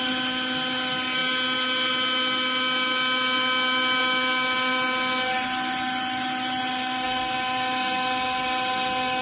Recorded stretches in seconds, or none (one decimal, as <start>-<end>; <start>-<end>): 0.0-9.2